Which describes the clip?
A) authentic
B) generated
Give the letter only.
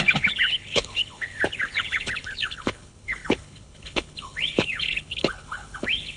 B